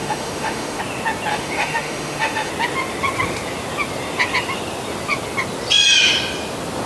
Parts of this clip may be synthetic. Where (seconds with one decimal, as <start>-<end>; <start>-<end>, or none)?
0.0-0.8; 1.3-2.5